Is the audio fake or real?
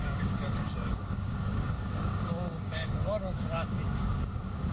fake